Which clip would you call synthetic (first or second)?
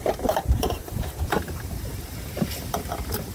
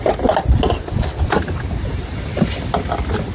first